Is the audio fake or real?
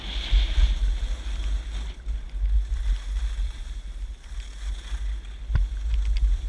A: real